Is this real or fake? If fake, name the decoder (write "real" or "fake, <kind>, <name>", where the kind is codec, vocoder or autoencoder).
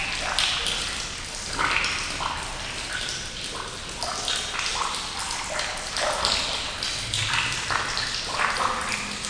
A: real